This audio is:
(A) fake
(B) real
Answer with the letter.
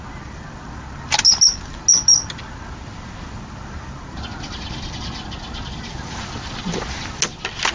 B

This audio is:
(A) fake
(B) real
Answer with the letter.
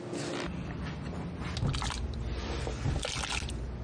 B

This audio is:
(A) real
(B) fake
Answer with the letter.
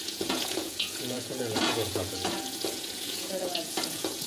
B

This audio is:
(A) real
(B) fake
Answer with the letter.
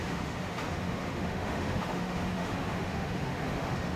B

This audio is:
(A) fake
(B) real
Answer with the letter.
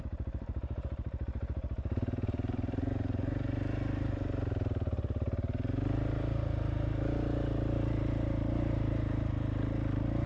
A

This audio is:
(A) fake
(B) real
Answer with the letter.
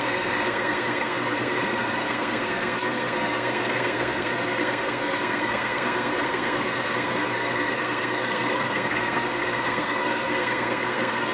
A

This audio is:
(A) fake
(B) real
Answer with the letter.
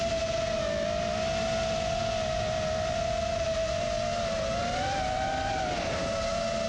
B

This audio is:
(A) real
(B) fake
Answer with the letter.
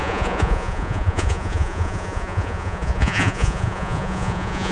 B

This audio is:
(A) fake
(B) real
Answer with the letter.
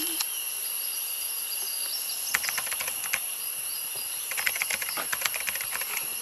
B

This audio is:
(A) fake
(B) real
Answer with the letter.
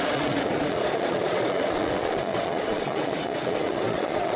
A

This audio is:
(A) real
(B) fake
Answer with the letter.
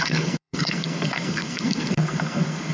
B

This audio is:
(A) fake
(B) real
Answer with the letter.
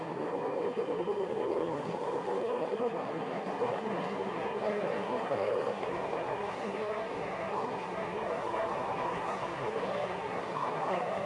A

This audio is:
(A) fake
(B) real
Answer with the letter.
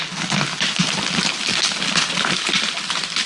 B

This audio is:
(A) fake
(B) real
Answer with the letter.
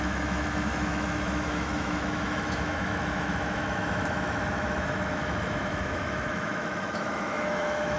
A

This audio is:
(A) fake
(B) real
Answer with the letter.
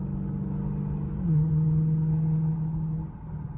B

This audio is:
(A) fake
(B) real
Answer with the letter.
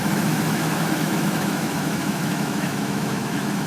A